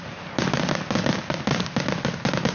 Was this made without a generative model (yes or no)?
yes